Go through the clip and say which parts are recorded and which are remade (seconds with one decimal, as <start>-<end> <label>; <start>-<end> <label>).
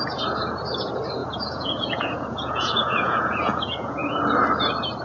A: 0.0-1.2 recorded; 1.2-4.2 remade; 4.2-5.0 recorded